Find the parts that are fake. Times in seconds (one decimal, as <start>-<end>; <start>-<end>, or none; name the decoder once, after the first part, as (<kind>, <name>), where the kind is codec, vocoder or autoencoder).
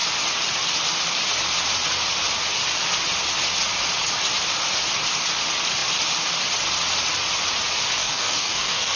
8.0-9.0 (codec, DAC)